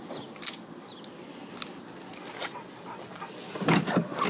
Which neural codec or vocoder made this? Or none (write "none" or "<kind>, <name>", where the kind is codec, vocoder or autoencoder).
vocoder, BigVGAN v2